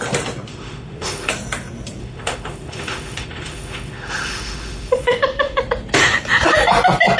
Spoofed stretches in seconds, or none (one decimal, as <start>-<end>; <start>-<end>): 0.5-1.3; 2.0-5.6